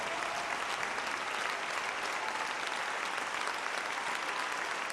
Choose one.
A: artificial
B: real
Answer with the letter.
B